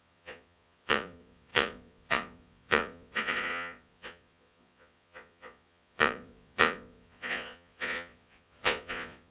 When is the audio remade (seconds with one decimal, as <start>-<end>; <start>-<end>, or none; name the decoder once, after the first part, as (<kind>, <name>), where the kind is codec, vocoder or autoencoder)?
0.0-9.3 (vocoder, Vocos)